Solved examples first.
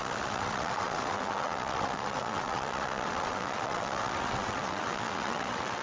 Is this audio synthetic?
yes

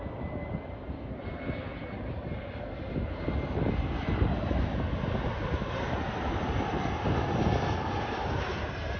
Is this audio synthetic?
no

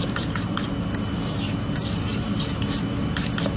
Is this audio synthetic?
no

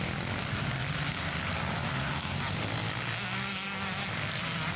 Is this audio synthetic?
no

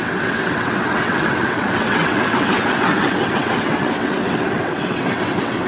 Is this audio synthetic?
yes